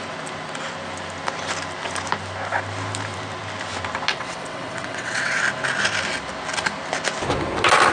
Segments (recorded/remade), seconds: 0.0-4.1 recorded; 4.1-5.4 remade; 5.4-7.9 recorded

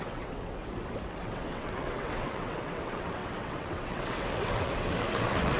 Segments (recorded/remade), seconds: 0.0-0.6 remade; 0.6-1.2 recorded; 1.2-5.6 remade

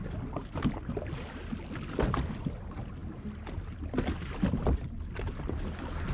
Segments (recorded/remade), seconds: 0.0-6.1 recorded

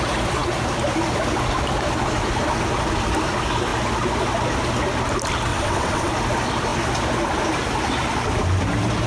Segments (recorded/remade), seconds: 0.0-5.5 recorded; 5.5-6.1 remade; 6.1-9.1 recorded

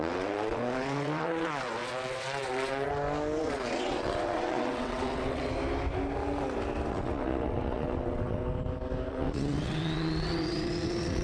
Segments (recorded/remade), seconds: 0.0-2.9 remade; 2.9-3.4 recorded; 3.4-5.5 remade; 5.5-6.9 recorded; 6.9-8.4 remade; 8.4-9.1 recorded; 9.1-11.2 remade

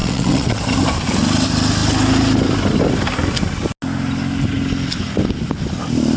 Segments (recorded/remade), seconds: 0.0-0.6 remade; 0.6-6.2 recorded

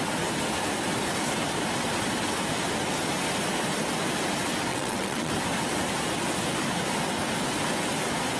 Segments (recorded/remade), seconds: 0.0-4.7 recorded; 4.7-5.3 remade; 5.3-8.4 recorded